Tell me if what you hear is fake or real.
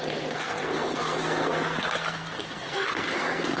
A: fake